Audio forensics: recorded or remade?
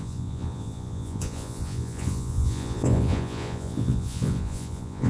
remade